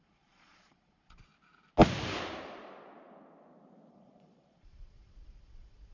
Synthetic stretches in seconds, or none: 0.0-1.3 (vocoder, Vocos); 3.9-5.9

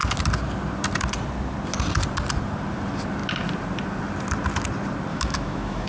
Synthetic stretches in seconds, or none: 5.1-5.9 (autoencoder, DAC-VAE)

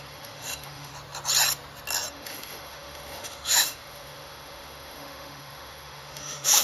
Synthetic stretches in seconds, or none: 0.0-0.9 (autoencoder, DAC-VAE); 2.1-6.6

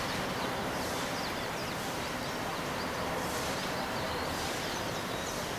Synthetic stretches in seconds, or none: none

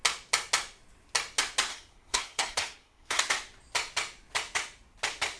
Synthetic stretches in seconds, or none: 1.7-3.2 (codec, SNAC)